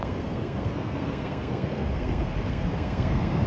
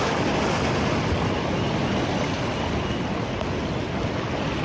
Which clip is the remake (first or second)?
first